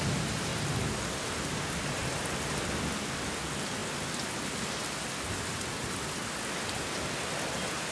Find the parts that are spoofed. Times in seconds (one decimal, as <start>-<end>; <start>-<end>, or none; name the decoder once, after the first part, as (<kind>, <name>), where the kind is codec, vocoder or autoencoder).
none